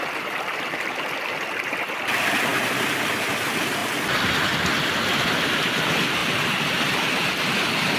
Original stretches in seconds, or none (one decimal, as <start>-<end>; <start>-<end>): 0.0-6.2; 7.3-8.0